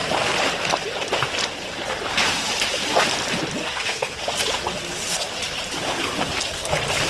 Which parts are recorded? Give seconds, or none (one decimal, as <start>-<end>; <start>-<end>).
0.0-3.6; 4.2-7.1